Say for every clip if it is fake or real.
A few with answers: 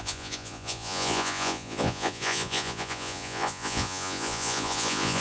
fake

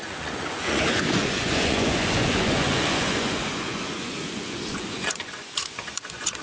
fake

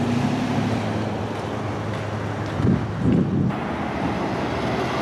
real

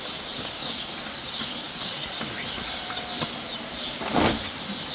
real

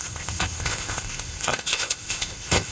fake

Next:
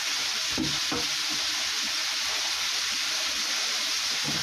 fake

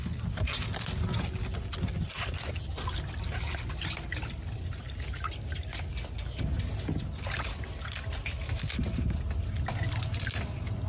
real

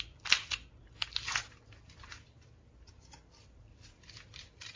real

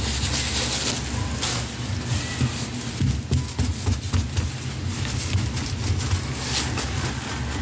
real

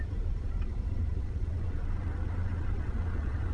fake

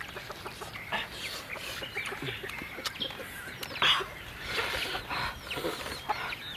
real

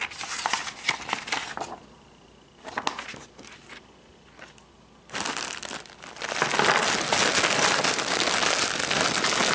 real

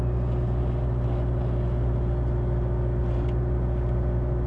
real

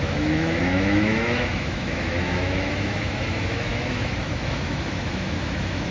fake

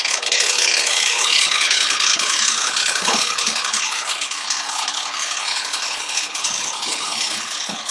fake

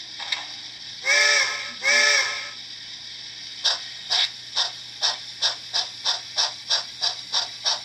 real